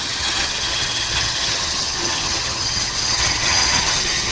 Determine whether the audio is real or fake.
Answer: fake